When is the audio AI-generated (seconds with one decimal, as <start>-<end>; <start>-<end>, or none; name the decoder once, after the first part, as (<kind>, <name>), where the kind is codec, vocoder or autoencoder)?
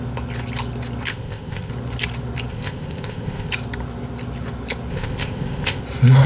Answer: 1.1-1.7 (codec, ZipCodec); 2.5-3.5; 4.9-5.8